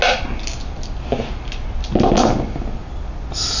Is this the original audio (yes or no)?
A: yes